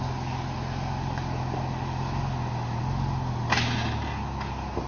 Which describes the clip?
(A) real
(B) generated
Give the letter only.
A